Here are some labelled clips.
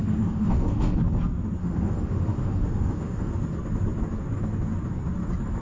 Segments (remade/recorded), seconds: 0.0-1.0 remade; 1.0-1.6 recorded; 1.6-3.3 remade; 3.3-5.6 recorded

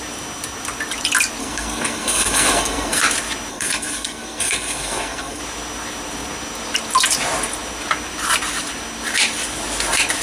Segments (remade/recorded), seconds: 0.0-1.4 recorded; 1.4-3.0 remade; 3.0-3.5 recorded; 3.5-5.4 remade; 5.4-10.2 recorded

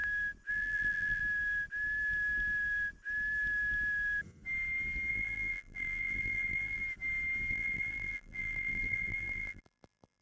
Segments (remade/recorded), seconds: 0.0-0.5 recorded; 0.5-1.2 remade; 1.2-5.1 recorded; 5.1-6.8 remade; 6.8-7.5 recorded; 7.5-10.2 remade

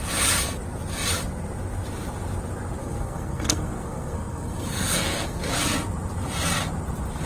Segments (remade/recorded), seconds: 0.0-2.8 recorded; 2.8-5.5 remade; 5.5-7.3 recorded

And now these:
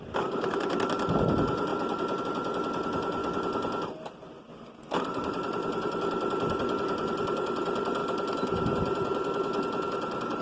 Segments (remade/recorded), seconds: 0.0-3.2 remade; 3.2-3.9 recorded; 3.9-8.0 remade; 8.0-10.4 recorded

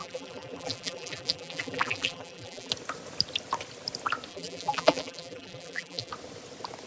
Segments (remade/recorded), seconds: 0.0-2.7 remade; 2.7-4.3 recorded; 4.3-6.1 remade; 6.1-6.9 recorded

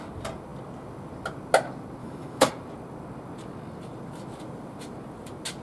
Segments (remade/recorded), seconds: 0.0-2.0 recorded; 2.0-2.5 remade; 2.5-5.6 recorded